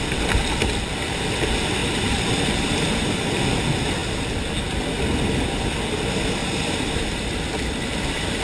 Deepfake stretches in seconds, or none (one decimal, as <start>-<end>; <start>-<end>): 1.8-3.2; 6.4-7.4